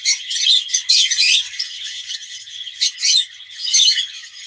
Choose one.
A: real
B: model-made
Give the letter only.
B